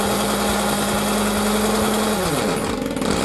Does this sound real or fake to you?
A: real